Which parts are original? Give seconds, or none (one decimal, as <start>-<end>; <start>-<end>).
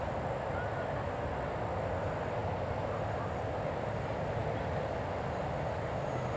0.0-6.4